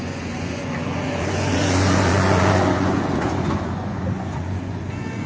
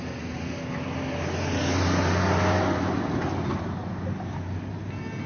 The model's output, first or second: first